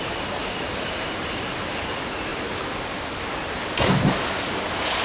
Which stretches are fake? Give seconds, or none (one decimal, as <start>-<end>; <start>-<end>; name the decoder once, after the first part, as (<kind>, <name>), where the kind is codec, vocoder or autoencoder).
0.4-1.9 (vocoder, BigVGAN v2); 2.3-3.1

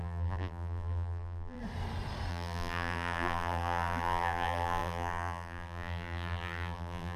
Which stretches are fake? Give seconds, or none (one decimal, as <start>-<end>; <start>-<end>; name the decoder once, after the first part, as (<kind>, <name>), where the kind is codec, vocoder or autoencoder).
0.0-1.6 (vocoder, BigVGAN v2); 2.3-7.2

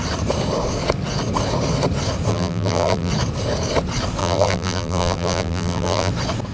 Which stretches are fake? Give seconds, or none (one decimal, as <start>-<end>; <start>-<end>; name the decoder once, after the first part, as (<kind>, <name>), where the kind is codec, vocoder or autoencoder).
2.3-3.1 (vocoder, BigVGAN v2); 4.2-6.1

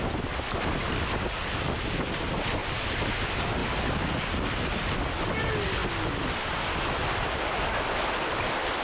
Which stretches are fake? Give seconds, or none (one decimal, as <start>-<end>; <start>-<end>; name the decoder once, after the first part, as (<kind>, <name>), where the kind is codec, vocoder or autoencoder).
2.6-3.1 (vocoder, BigVGAN v2)

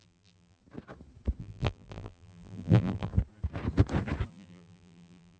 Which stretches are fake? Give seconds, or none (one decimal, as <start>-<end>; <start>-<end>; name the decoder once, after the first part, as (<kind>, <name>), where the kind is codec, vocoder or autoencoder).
0.0-0.6 (vocoder, BigVGAN v2); 1.4-3.1; 4.3-5.4

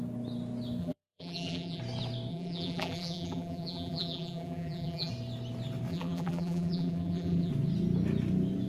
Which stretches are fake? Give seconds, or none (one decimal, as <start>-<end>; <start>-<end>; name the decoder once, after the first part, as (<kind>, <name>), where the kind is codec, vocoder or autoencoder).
0.8-1.8 (vocoder, BigVGAN v2); 2.3-5.1; 5.9-7.5

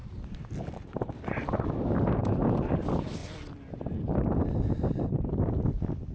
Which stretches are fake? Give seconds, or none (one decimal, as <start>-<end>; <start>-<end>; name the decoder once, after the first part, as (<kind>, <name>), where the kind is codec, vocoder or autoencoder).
0.0-1.7 (vocoder, BigVGAN v2); 3.2-5.3

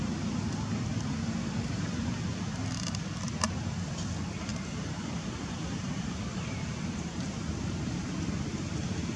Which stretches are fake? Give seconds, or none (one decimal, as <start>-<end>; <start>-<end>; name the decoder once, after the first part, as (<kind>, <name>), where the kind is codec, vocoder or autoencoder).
0.9-2.0 (vocoder, BigVGAN v2); 4.5-8.3